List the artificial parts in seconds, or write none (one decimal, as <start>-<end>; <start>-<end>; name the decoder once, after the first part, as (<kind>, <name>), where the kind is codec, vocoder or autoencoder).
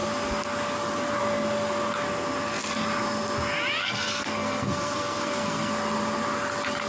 3.8-5.7 (codec, SNAC)